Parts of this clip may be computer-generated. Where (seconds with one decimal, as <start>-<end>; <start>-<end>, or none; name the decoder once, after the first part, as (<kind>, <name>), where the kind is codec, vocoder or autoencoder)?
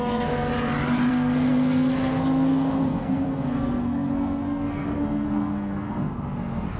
0.0-0.5 (codec, SNAC); 1.1-6.8